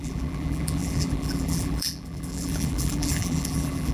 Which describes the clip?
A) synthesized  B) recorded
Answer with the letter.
A